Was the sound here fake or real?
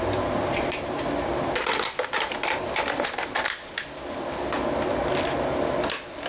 real